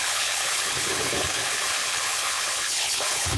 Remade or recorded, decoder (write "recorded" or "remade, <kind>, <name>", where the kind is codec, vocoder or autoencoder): remade, codec, HILCodec